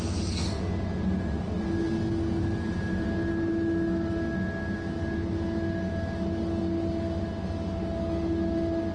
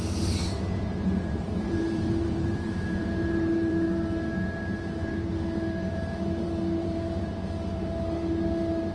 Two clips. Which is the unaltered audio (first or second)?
first